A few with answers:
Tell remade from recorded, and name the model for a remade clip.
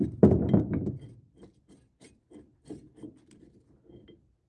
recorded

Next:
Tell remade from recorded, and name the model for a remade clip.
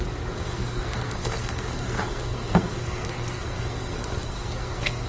remade, codec, SNAC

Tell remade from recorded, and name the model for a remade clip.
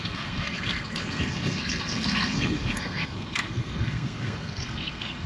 remade, codec, SNAC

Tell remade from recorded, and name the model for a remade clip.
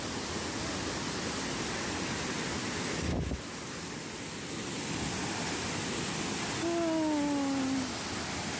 recorded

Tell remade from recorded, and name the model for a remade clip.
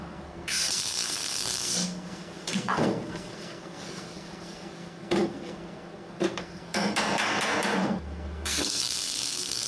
remade, codec, SNAC